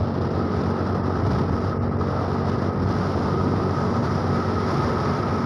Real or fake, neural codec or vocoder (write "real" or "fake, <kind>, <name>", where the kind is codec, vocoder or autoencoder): real